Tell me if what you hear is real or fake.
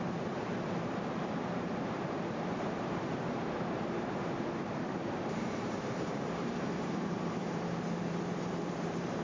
fake